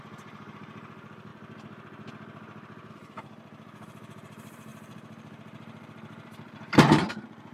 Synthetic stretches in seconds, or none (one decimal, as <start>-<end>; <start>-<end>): 0.0-1.3; 2.9-7.5